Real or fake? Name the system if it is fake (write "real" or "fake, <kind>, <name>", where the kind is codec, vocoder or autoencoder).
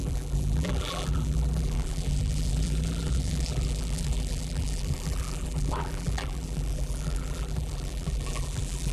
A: fake, vocoder, BigVGAN v2